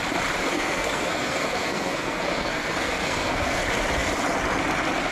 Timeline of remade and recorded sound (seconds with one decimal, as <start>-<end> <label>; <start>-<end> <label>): 0.0-0.5 recorded; 0.5-3.6 remade; 3.6-5.1 recorded